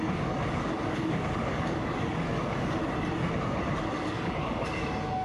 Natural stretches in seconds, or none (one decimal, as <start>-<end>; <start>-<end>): 2.8-3.8